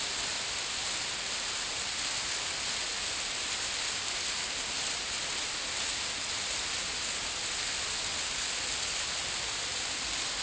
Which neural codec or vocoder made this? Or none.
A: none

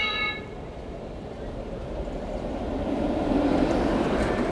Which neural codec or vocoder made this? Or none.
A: vocoder, BigVGAN v2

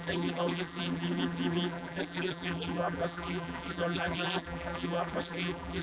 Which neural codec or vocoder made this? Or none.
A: vocoder, BigVGAN v2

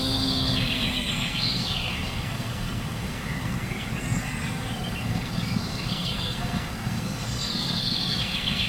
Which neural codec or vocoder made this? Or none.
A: codec, SNAC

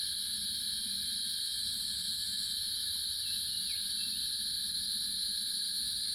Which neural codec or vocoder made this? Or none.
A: none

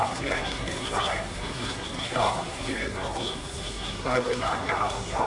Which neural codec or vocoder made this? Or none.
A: codec, SNAC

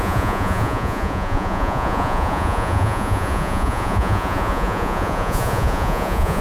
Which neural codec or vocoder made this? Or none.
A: vocoder, Vocos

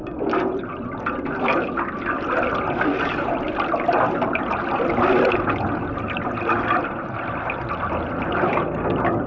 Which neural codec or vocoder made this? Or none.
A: vocoder, BigVGAN v2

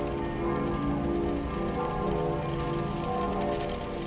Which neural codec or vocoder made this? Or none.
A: none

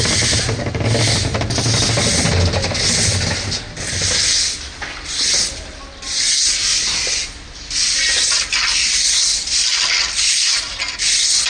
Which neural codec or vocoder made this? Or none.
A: none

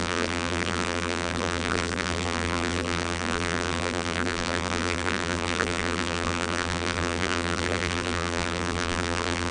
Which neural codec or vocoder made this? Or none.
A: vocoder, BigVGAN v2